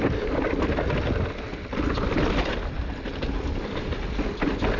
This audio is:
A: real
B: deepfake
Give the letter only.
A